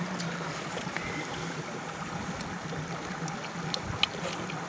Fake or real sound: real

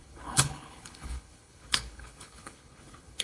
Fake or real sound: fake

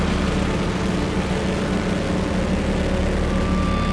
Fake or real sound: real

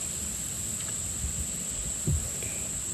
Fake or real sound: real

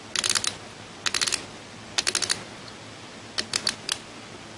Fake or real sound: real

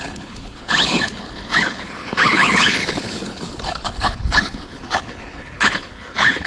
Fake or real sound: fake